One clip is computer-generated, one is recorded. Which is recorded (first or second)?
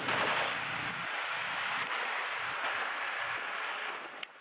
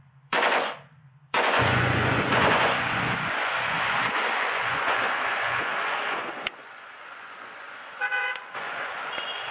first